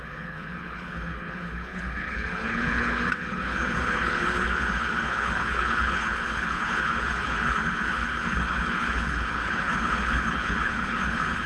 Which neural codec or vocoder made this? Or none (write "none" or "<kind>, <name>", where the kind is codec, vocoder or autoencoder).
codec, HILCodec